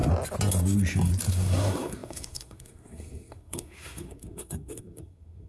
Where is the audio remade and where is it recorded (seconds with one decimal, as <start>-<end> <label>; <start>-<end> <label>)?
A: 0.0-1.3 recorded; 1.3-5.5 remade